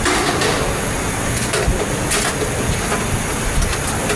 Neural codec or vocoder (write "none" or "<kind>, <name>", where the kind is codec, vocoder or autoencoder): none